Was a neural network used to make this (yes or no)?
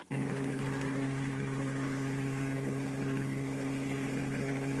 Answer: yes